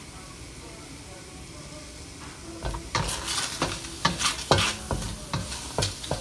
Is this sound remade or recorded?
recorded